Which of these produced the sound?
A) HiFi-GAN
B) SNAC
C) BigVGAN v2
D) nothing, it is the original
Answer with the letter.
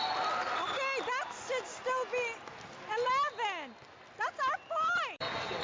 D